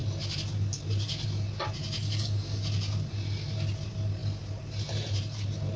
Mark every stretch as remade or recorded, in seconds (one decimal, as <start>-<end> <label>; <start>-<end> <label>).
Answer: 0.0-2.0 recorded; 2.0-2.6 remade; 2.6-5.8 recorded